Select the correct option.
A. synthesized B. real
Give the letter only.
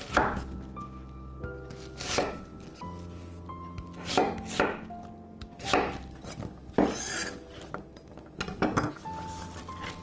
B